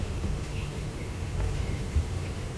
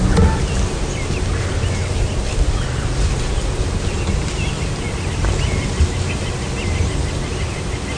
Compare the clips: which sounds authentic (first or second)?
second